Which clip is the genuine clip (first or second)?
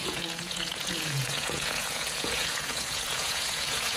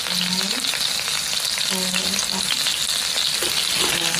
second